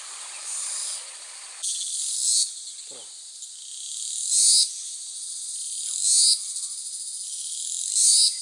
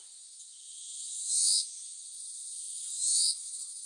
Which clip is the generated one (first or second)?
second